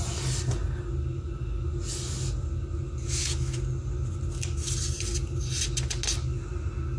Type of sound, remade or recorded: recorded